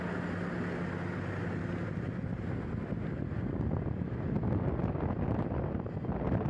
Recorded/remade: recorded